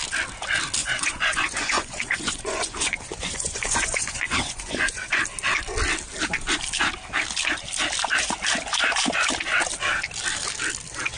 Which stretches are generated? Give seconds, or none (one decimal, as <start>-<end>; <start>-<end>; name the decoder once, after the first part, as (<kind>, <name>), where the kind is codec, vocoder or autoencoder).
0.8-5.2 (vocoder, Vocos)